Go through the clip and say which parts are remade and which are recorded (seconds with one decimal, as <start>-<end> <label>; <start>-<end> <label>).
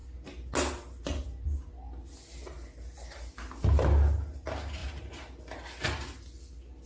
0.0-6.9 recorded